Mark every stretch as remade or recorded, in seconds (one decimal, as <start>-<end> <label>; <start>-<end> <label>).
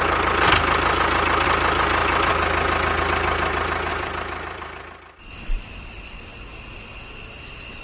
0.0-3.9 recorded; 3.9-6.2 remade; 6.2-7.8 recorded